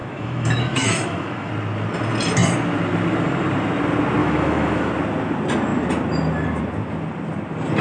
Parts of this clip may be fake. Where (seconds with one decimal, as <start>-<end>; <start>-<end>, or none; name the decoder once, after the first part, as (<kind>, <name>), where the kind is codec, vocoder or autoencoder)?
0.0-1.5 (autoencoder, DAC-VAE); 4.2-4.9